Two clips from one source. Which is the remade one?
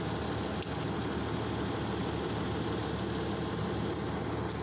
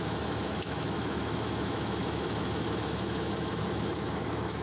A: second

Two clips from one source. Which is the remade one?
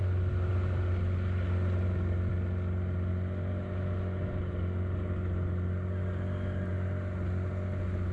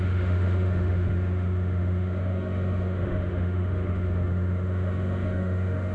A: second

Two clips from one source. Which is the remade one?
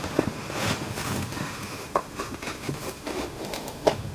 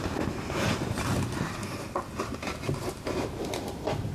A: first